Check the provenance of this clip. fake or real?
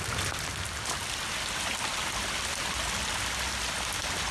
real